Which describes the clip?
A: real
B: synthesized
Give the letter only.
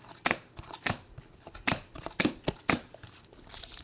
A